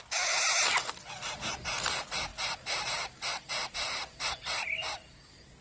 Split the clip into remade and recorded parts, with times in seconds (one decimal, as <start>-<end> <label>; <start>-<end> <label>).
0.0-2.3 recorded; 2.3-4.3 remade; 4.3-5.6 recorded